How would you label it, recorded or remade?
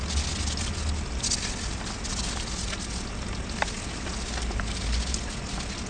recorded